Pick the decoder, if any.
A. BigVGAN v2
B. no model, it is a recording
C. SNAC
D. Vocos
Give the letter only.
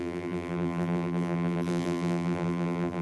A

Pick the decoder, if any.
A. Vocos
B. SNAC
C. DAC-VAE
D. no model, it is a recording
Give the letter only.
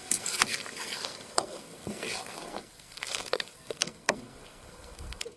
B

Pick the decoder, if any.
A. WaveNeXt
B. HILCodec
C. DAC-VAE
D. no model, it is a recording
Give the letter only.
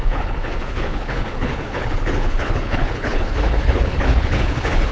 B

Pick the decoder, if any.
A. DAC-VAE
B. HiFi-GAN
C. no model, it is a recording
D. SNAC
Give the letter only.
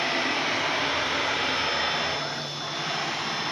C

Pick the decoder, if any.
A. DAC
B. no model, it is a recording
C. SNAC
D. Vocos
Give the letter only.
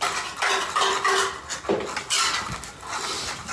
B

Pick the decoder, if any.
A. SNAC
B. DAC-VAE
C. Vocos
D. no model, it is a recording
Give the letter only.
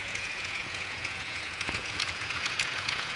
C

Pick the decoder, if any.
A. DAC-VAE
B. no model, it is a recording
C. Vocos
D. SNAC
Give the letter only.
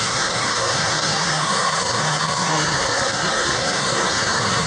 D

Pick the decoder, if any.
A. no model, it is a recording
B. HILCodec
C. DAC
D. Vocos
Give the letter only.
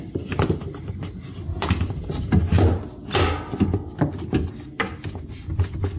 A